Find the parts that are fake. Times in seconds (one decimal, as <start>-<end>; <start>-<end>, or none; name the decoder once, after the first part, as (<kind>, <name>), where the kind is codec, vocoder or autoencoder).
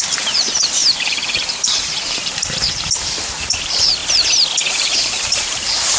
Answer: 0.0-4.0 (vocoder, BigVGAN v2); 4.7-6.0